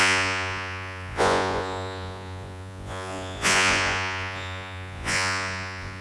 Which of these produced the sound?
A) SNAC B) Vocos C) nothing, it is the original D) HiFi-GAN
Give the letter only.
B